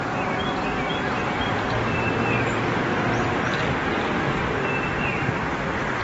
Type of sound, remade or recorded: recorded